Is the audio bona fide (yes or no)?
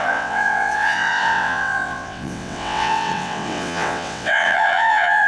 no